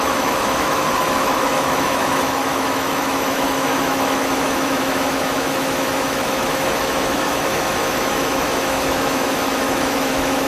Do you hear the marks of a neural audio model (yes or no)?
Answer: yes